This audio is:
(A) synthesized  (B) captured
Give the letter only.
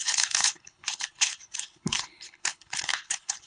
A